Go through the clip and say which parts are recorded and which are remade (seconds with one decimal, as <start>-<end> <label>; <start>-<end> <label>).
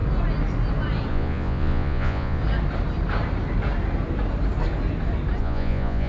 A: 0.0-1.1 recorded; 1.1-2.4 remade; 2.4-5.4 recorded; 5.4-6.1 remade